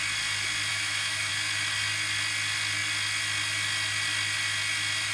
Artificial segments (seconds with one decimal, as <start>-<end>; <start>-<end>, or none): 0.7-1.3